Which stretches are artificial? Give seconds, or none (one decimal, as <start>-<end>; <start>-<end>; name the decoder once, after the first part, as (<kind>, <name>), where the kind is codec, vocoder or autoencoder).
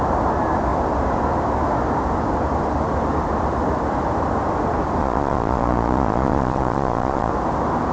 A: 5.0-7.3 (vocoder, Vocos)